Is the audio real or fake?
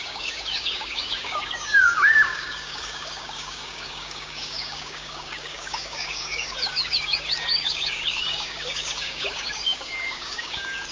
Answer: fake